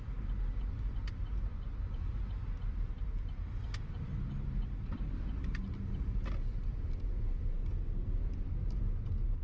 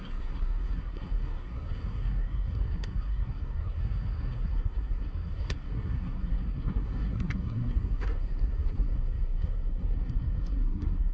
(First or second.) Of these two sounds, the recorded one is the first